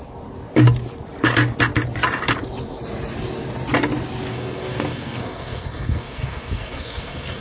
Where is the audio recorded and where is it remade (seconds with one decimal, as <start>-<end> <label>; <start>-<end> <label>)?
0.0-4.3 recorded; 4.3-7.4 remade